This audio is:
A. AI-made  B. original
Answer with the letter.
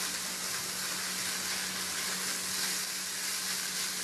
B